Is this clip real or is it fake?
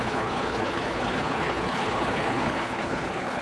fake